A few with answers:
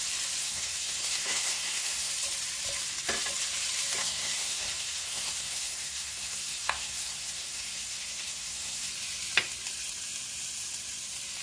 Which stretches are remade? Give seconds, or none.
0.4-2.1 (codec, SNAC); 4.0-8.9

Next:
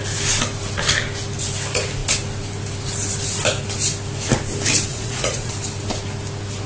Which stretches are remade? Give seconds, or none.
4.9-5.5 (vocoder, Vocos)

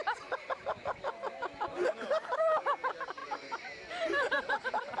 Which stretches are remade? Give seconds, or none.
none

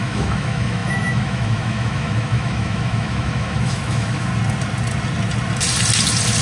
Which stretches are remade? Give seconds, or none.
0.0-4.3 (autoencoder, DAC-VAE)

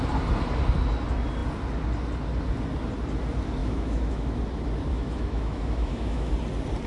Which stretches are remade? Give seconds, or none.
3.6-4.4 (autoencoder, DAC-VAE); 4.9-6.3